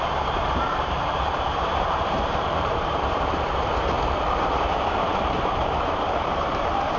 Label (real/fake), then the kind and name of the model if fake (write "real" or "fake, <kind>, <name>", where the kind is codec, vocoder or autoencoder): fake, vocoder, BigVGAN v2